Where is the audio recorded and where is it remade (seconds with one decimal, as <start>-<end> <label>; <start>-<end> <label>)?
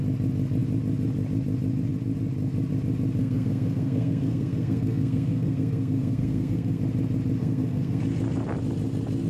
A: 0.0-3.2 recorded; 3.2-6.8 remade; 6.8-7.4 recorded; 7.4-8.0 remade; 8.0-9.3 recorded